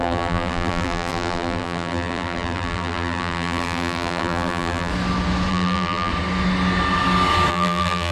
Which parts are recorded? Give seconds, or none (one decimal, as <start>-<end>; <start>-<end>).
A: 4.9-5.5; 6.1-7.5